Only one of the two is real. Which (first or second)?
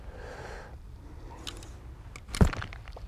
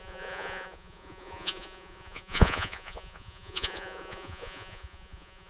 first